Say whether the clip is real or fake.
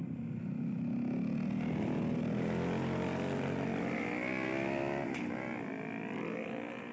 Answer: real